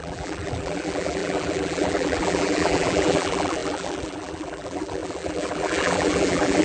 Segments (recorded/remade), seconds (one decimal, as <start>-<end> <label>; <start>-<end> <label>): 0.0-6.6 remade